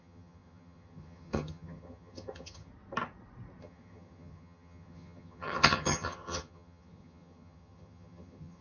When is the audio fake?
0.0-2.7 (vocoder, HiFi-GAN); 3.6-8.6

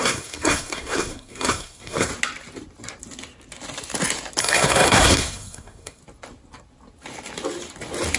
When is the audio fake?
0.0-2.1 (codec, SNAC); 4.4-6.0

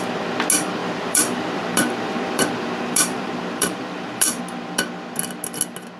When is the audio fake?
0.8-4.4 (vocoder, BigVGAN v2)